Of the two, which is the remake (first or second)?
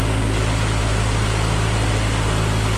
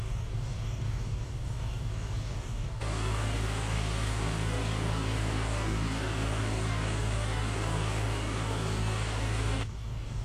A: second